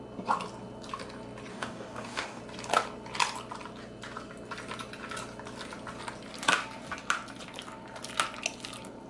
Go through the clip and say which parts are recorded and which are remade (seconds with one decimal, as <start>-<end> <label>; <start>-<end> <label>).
0.0-1.5 recorded; 1.5-2.4 remade; 2.4-9.1 recorded